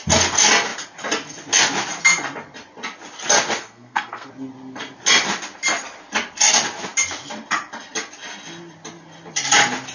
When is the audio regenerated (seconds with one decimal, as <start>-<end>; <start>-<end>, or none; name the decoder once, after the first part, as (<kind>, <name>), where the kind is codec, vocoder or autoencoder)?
3.6-4.3 (codec, SNAC)